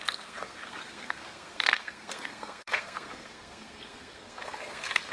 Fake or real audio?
fake